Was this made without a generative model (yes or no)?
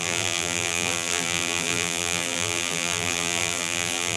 no